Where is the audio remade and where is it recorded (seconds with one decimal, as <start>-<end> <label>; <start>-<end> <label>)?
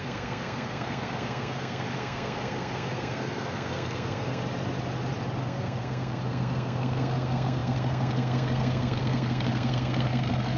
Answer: 0.0-4.4 remade; 4.4-5.4 recorded; 5.4-10.6 remade